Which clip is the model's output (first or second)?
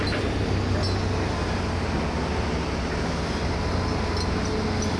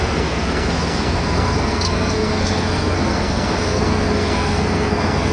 second